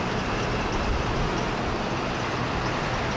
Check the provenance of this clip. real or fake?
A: real